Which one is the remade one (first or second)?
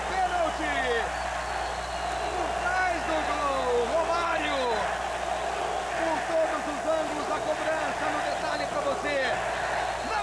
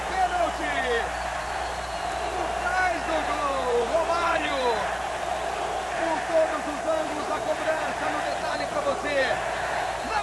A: second